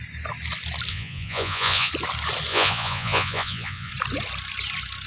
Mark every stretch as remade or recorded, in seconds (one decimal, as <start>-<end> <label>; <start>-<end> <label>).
0.0-0.9 recorded; 0.9-1.9 remade; 1.9-2.5 recorded; 2.5-3.9 remade; 3.9-5.1 recorded